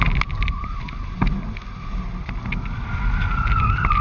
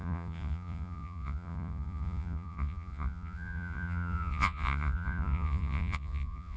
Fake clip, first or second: second